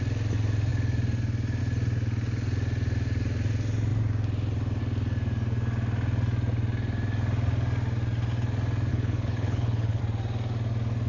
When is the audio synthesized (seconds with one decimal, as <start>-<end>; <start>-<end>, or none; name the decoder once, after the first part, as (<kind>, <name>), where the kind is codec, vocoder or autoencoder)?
8.9-10.0 (codec, HILCodec)

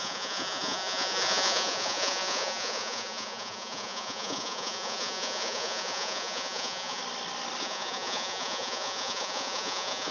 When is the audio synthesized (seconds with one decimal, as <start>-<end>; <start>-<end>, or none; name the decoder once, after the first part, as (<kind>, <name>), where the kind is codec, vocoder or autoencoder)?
0.0-7.0 (vocoder, Vocos); 7.6-10.1

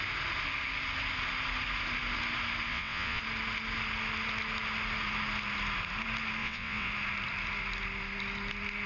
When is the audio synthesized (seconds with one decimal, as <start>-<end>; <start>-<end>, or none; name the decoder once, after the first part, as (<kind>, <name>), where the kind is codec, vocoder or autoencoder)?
2.7-3.2 (vocoder, WaveNeXt); 6.4-6.9

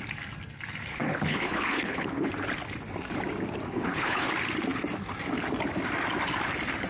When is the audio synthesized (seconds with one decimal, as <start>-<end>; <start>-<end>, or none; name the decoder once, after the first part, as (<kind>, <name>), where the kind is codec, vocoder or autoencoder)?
0.9-2.3 (codec, HILCodec); 3.7-4.3

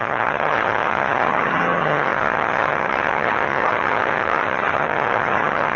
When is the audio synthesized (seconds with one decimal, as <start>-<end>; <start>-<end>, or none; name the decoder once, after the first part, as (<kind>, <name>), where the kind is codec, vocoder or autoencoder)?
0.0-5.8 (vocoder, HiFi-GAN)